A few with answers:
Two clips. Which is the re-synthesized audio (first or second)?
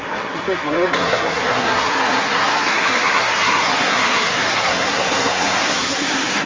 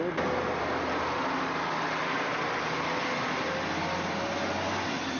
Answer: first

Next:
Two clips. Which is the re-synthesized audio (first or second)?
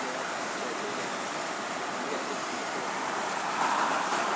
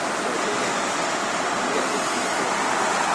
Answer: first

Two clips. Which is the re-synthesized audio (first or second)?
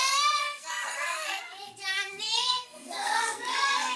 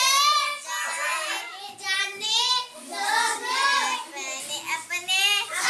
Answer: first